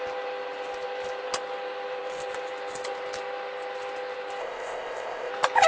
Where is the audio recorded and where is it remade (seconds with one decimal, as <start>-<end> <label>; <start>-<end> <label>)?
0.0-4.4 recorded; 4.4-5.3 remade; 5.3-5.7 recorded